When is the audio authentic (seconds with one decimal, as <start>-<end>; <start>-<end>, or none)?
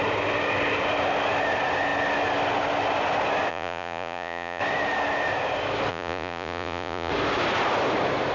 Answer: 0.0-3.5; 4.6-5.9; 7.1-8.3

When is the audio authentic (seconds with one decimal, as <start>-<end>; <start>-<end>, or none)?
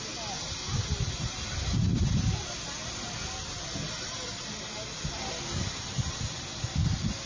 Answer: 0.0-7.3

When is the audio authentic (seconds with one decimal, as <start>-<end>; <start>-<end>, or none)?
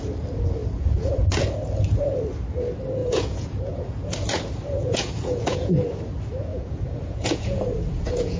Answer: 0.0-0.6; 1.1-3.0; 3.9-4.8; 5.8-6.5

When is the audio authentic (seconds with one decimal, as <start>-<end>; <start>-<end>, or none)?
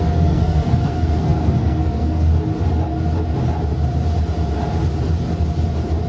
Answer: 2.3-6.1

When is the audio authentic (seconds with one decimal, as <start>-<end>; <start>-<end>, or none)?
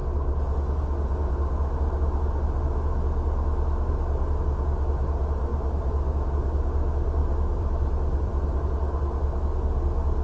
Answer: 0.0-5.5; 6.3-7.2; 8.7-10.2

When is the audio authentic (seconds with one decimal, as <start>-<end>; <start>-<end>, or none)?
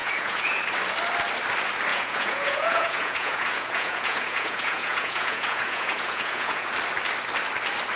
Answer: 0.6-1.9; 6.7-8.0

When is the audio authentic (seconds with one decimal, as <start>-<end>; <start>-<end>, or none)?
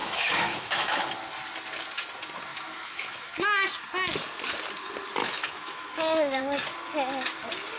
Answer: 1.1-2.5; 3.4-5.2; 6.4-7.8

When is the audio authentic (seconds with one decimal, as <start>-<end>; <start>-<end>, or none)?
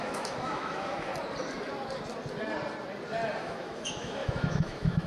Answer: 1.1-3.4